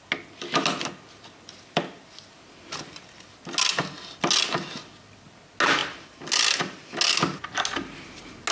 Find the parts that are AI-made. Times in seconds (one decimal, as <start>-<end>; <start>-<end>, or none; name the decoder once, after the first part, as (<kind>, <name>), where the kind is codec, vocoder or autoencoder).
none